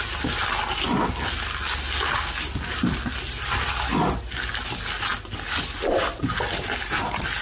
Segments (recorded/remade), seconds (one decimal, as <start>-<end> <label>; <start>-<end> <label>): 0.0-7.4 recorded